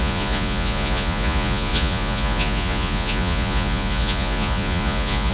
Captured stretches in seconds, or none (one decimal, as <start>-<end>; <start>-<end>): none